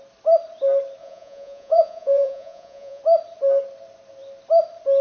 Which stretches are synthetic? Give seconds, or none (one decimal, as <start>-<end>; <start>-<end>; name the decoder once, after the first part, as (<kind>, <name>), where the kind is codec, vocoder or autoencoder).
1.0-3.0 (vocoder, Vocos)